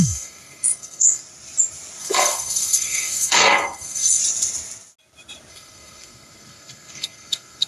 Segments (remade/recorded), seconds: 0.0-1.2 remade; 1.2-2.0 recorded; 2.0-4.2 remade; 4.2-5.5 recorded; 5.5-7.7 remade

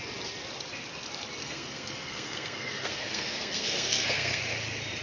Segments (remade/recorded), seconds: 0.0-1.4 recorded; 1.4-4.4 remade; 4.4-5.0 recorded

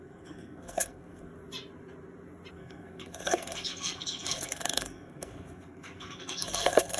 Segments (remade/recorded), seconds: 0.0-1.3 remade; 1.3-2.5 recorded; 2.5-7.0 remade